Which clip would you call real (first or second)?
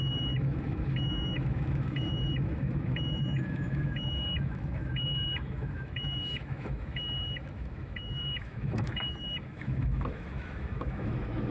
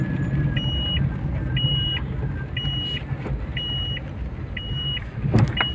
second